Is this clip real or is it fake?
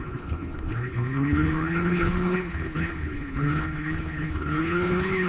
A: fake